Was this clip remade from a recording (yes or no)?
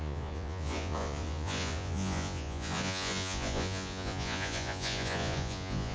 yes